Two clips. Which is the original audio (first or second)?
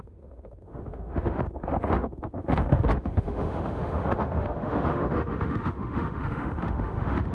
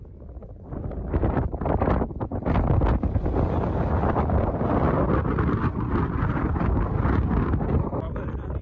second